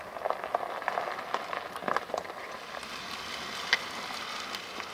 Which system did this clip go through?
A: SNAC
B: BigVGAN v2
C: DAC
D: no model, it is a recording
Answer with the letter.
D